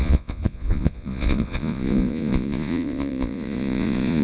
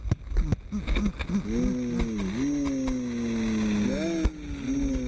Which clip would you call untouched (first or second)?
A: second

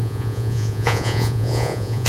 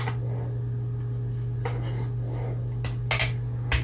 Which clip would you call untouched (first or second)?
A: second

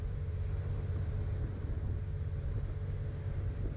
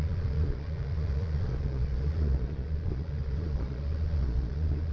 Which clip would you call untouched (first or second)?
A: first